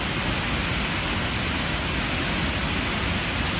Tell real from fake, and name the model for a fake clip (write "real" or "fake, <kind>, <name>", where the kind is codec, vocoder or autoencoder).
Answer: real